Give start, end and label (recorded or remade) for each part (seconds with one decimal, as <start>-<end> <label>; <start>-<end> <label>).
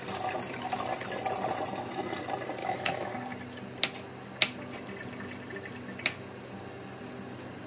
0.0-2.6 recorded; 2.6-3.1 remade; 3.1-7.7 recorded